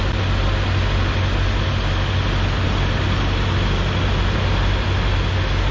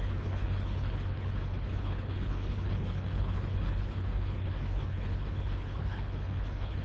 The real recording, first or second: first